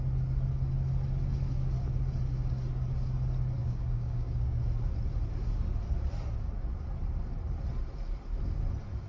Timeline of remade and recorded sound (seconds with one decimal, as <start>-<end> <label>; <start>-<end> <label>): 0.0-3.6 recorded; 3.6-4.6 remade; 4.6-9.1 recorded